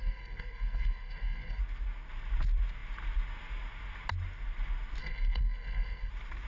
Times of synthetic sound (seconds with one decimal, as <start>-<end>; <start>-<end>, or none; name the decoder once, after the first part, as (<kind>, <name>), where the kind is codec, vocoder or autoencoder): 0.0-1.6 (codec, SNAC); 5.0-6.1